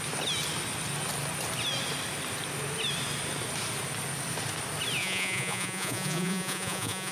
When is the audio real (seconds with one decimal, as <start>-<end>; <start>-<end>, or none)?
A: 0.0-5.0